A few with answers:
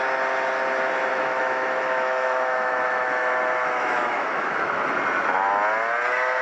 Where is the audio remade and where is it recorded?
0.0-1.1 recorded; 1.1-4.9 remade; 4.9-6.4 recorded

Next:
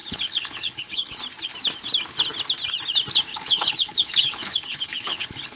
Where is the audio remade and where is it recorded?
0.0-1.2 remade; 1.2-3.3 recorded; 3.3-5.6 remade

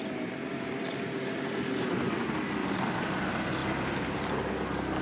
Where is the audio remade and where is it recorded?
0.0-0.4 recorded; 0.4-1.1 remade; 1.1-2.6 recorded; 2.6-3.2 remade; 3.2-3.6 recorded; 3.6-4.3 remade; 4.3-5.0 recorded

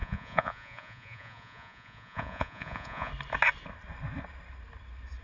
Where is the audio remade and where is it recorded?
0.0-3.1 remade; 3.1-5.2 recorded